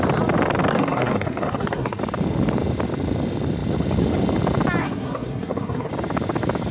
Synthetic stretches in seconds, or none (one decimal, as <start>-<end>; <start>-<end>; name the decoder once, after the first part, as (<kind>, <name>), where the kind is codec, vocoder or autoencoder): 0.7-2.0 (codec, SNAC); 4.8-5.9